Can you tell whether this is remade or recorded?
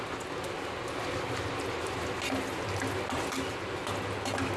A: recorded